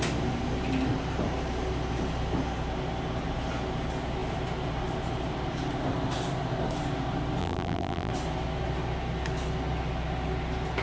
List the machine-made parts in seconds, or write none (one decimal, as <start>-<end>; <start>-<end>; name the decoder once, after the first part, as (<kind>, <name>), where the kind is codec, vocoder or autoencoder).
7.4-8.1 (vocoder, BigVGAN v2)